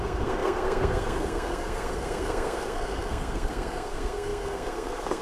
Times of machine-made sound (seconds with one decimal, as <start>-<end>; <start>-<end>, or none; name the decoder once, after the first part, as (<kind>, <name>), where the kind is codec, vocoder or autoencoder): 0.0-5.2 (codec, SNAC)